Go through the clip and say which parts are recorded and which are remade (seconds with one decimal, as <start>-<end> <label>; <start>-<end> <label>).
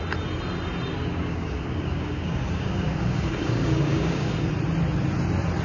0.0-1.1 recorded; 1.1-4.5 remade; 4.5-5.6 recorded